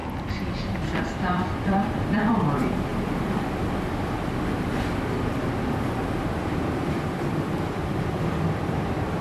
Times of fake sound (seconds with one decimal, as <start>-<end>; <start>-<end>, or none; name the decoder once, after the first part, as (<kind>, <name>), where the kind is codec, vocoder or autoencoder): 0.7-9.2 (vocoder, BigVGAN v2)